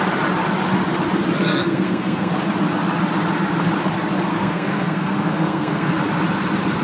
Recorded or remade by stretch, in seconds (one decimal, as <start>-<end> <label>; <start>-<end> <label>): 0.0-1.4 recorded; 1.4-2.3 remade; 2.3-4.3 recorded; 4.3-5.9 remade; 5.9-6.8 recorded